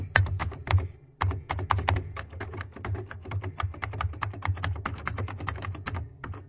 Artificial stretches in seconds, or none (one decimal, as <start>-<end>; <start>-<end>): none